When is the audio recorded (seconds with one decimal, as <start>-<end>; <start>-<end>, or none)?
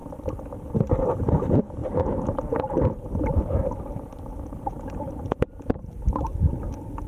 0.0-1.8; 6.1-7.1